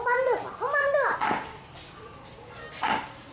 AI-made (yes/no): no